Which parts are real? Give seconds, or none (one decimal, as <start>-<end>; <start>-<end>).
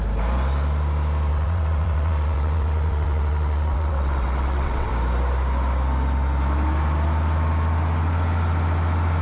0.0-1.3; 4.9-9.2